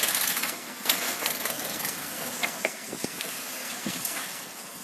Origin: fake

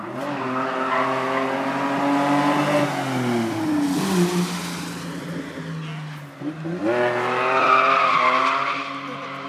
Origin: real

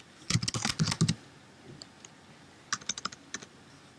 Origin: real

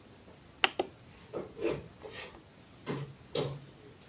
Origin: real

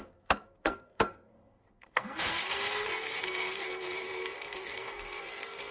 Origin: fake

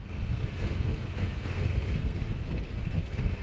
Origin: fake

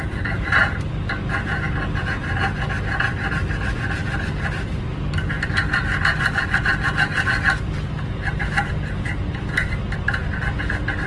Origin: real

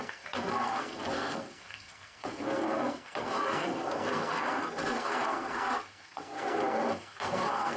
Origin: fake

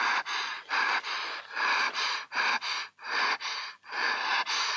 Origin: real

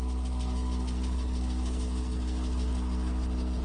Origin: fake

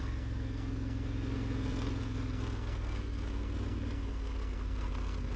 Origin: fake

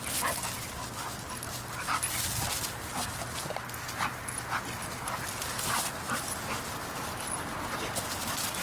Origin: real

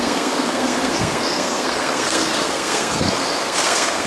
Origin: fake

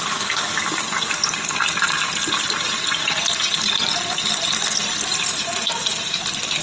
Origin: real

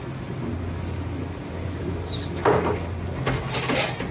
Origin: real